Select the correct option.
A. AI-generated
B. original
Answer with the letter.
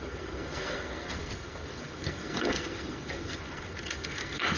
A